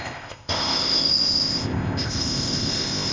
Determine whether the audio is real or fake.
fake